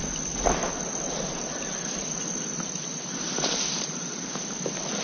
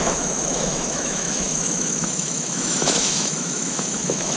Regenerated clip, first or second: second